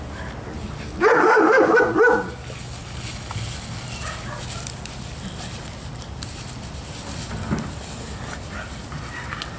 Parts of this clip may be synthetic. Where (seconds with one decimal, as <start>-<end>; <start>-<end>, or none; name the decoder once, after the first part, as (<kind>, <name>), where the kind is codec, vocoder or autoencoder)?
1.2-1.8 (autoencoder, DAC-VAE)